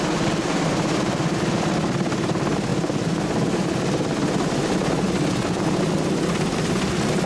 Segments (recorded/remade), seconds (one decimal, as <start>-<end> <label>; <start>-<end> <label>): 0.0-7.3 recorded